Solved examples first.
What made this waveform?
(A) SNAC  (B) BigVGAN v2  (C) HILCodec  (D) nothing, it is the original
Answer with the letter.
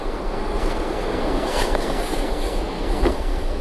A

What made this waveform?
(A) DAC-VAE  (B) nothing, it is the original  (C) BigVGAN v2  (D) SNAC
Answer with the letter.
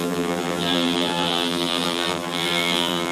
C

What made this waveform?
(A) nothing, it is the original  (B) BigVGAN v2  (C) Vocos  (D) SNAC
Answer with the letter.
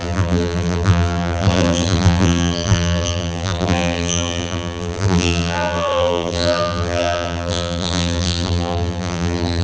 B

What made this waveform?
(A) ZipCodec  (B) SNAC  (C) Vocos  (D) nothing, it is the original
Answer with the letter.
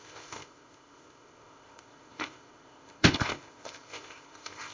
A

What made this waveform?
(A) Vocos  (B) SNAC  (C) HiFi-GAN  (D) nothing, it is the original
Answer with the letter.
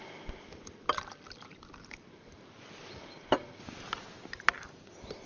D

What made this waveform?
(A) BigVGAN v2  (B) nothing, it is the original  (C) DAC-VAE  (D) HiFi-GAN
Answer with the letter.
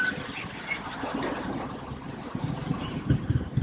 B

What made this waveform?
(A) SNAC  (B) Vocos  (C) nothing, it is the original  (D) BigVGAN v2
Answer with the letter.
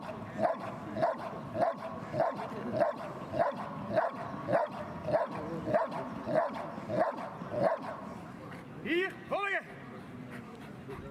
D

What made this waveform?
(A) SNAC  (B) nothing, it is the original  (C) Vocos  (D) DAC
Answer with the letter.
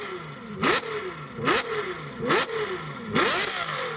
B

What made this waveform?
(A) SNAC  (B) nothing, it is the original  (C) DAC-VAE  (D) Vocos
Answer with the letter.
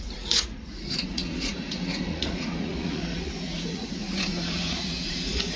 D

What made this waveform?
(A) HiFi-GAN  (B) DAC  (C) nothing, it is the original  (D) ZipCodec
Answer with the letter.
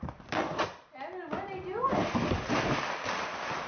C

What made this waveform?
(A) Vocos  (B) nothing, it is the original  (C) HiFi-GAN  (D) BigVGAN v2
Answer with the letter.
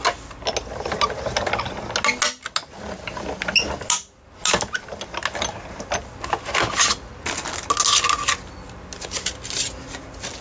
B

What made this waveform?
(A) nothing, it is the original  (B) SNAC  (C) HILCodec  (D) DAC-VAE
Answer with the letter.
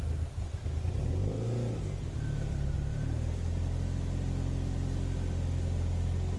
A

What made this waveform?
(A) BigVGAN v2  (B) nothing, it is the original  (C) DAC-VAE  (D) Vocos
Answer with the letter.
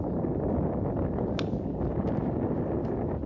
B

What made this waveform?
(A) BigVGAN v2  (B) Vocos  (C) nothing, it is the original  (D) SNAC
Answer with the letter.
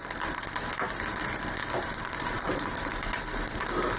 C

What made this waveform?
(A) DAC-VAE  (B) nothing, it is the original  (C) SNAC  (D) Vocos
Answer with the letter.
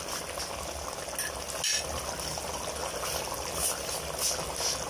B